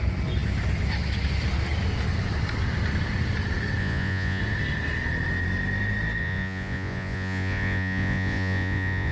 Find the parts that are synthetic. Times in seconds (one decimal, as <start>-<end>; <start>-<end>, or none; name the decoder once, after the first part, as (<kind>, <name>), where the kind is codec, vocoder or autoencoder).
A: 3.8-4.4 (vocoder, Vocos); 6.2-9.1